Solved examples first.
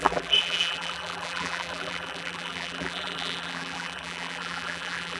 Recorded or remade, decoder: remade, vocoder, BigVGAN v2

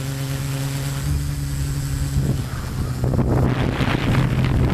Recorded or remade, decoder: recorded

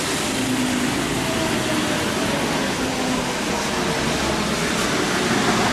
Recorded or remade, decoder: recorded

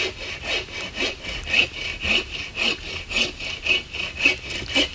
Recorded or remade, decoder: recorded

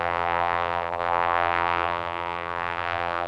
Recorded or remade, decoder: remade, vocoder, BigVGAN v2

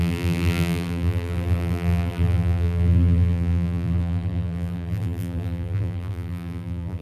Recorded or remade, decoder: remade, vocoder, BigVGAN v2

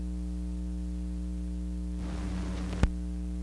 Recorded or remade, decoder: recorded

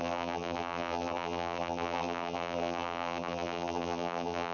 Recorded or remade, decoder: remade, vocoder, BigVGAN v2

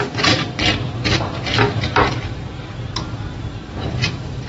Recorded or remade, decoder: remade, vocoder, BigVGAN v2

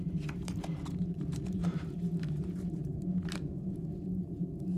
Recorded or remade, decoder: remade, vocoder, BigVGAN v2